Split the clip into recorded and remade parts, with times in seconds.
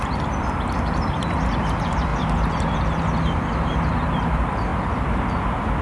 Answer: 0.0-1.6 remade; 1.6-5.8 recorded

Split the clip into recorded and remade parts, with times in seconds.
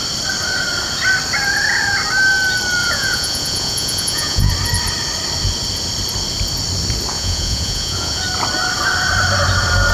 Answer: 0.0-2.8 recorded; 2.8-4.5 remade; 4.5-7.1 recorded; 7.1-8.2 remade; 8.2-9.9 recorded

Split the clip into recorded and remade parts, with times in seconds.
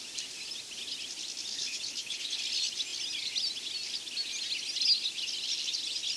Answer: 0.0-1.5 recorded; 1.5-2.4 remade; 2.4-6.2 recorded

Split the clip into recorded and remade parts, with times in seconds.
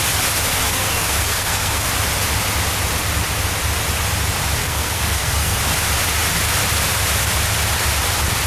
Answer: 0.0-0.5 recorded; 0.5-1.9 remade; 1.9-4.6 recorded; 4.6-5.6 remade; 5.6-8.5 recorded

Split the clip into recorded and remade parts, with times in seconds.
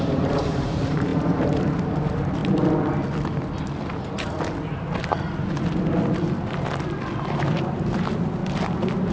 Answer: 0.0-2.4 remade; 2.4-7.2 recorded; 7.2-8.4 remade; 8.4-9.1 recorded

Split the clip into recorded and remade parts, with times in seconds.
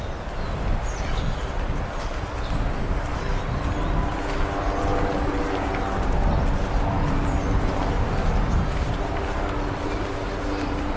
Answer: 0.0-11.0 recorded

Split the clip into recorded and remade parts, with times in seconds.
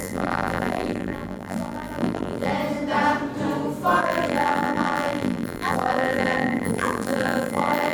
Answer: 0.0-2.5 remade; 2.5-4.0 recorded; 4.0-7.9 remade